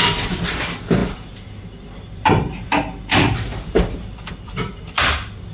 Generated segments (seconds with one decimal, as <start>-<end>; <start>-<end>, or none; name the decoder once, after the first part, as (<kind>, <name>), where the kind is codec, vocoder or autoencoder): 0.0-5.5 (vocoder, BigVGAN v2)